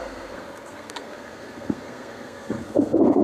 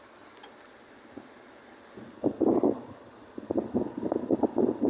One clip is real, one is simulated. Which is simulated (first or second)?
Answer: first